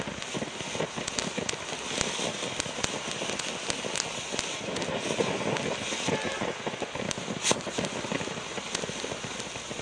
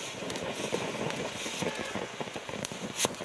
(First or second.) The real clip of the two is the first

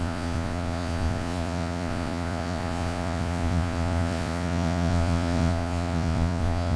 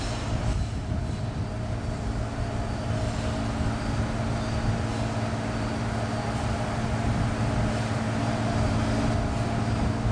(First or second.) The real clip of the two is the second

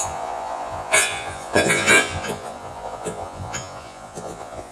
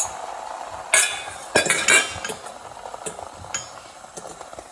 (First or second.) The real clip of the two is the second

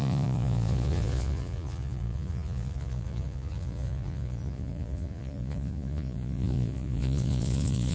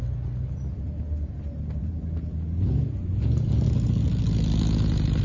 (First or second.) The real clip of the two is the second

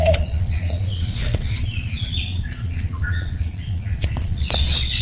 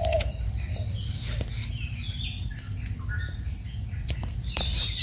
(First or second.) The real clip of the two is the second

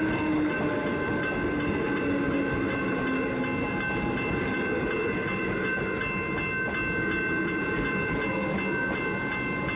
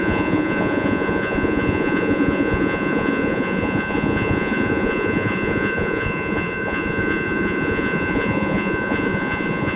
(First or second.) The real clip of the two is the first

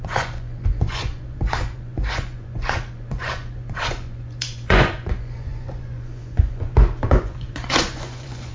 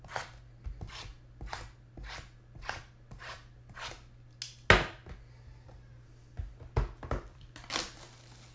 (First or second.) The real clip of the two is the second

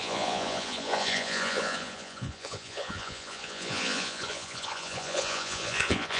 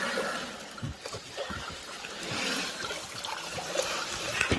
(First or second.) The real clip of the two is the second